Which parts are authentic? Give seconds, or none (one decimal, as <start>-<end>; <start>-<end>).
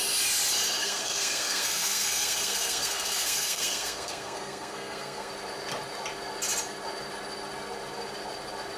0.0-0.8; 5.3-8.8